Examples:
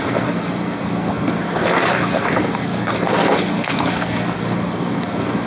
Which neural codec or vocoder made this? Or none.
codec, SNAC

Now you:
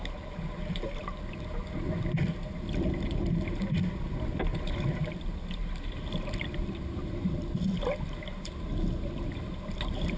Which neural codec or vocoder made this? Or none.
none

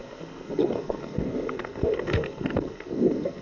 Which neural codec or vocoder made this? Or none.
codec, SNAC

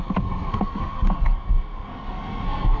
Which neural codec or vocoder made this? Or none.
codec, SNAC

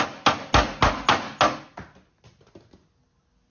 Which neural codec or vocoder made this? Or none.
none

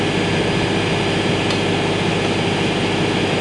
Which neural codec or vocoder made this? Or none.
none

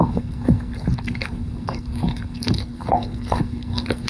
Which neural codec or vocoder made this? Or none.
codec, SNAC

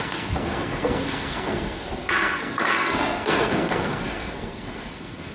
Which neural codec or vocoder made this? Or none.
codec, SNAC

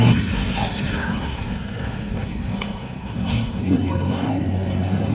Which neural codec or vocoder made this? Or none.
codec, SNAC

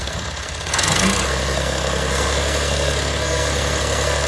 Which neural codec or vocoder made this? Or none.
codec, SNAC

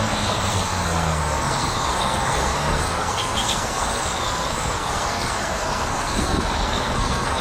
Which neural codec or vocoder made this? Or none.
codec, SNAC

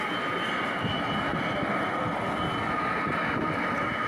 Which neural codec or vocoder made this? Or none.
none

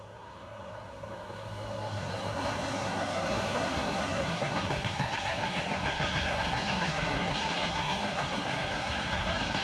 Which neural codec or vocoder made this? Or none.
codec, SNAC